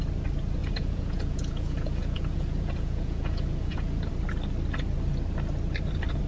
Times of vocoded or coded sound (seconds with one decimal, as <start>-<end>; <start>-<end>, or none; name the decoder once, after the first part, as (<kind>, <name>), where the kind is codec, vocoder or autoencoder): 0.6-4.1 (vocoder, Vocos)

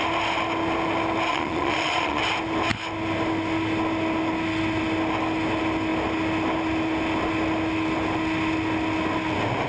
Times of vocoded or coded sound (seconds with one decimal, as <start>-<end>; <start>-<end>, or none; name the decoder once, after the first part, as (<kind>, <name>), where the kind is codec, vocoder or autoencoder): 1.3-2.2 (vocoder, Vocos)

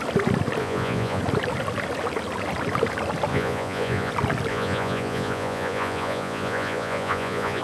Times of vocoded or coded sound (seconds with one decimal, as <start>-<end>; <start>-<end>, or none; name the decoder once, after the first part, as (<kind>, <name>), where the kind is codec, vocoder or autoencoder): 0.6-1.2 (vocoder, Vocos); 3.3-4.1; 4.5-7.6

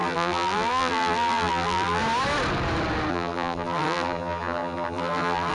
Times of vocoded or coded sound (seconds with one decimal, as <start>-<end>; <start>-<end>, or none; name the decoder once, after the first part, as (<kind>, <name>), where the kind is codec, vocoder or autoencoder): 0.0-2.0 (vocoder, BigVGAN v2); 3.1-5.5

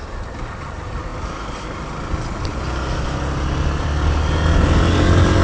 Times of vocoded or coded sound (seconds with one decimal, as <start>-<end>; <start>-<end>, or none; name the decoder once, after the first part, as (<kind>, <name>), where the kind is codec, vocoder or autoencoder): none